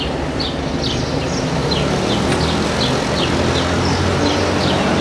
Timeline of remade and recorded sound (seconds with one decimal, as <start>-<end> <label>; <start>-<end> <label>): 0.0-5.0 recorded